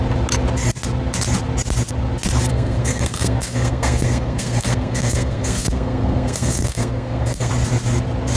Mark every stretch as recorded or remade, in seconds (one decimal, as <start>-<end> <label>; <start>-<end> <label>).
0.0-2.5 recorded; 2.5-7.5 remade; 7.5-8.4 recorded